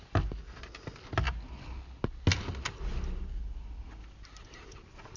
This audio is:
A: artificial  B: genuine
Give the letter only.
B